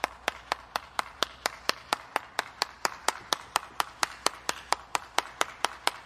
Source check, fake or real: fake